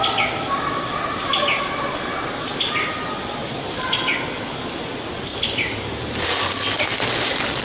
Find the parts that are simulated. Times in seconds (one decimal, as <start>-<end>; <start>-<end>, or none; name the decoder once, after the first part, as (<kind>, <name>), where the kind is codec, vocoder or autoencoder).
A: 3.4-3.9 (vocoder, BigVGAN v2); 5.3-6.0